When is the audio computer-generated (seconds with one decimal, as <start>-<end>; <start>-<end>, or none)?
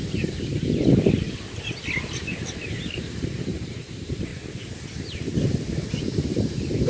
0.0-0.5; 2.7-4.3; 5.9-6.9